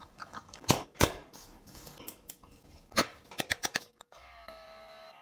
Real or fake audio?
fake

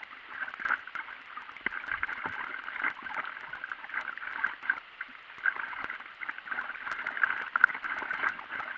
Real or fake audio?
fake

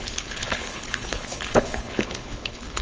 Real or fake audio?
fake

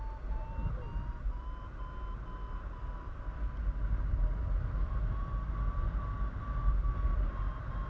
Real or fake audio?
real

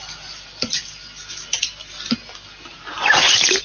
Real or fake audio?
real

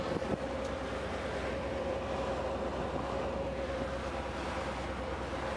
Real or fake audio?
real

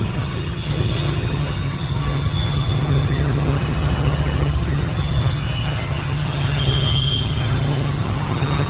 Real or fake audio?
fake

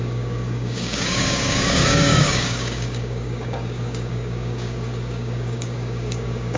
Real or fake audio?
fake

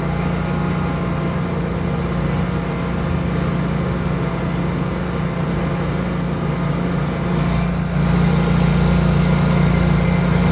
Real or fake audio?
real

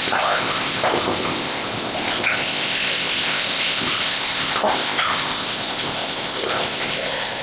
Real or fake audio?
fake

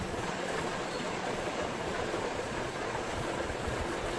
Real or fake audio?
fake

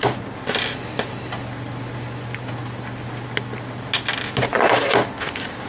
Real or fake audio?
real